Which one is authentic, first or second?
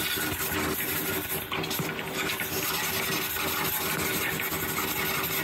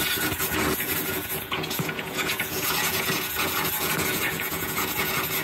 first